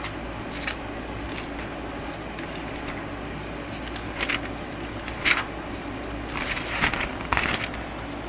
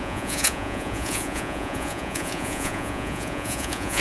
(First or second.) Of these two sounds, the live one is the first